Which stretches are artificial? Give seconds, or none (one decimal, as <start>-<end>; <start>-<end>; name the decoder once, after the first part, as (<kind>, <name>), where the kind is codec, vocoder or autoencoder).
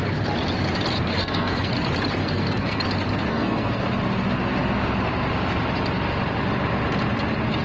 1.1-1.7 (codec, SNAC); 2.2-2.8; 3.3-3.8